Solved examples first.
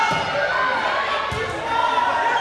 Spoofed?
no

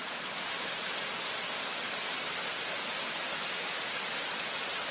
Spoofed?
no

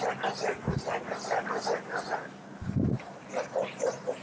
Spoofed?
no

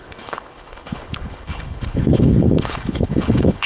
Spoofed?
yes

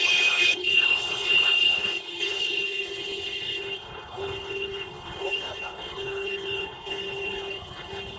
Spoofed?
yes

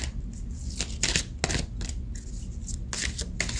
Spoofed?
no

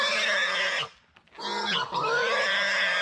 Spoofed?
no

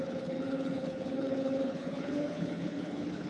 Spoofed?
yes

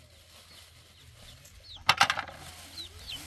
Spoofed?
no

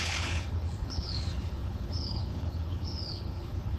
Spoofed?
yes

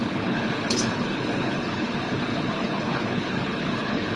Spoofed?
yes